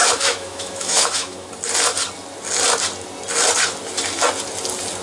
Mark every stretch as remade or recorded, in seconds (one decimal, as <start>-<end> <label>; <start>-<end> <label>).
0.0-1.5 remade; 1.5-5.0 recorded